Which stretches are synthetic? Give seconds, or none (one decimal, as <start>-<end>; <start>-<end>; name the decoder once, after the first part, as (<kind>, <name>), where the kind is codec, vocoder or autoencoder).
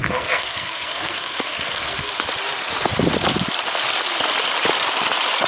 0.0-2.1 (codec, SNAC)